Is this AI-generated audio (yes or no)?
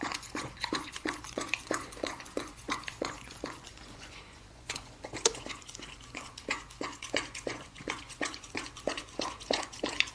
yes